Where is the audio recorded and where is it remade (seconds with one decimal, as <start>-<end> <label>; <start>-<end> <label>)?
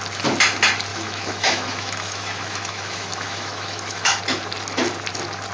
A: 0.0-0.9 recorded; 0.9-4.2 remade; 4.2-5.5 recorded